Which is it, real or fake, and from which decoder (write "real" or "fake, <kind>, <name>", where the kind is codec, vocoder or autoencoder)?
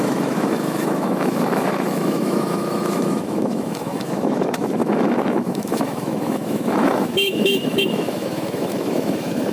fake, autoencoder, DAC-VAE